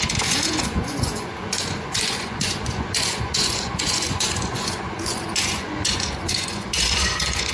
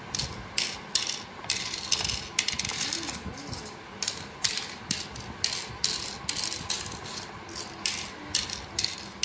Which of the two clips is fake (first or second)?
first